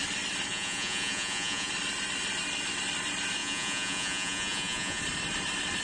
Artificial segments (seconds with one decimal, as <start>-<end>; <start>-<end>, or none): 0.5-1.7; 3.4-5.0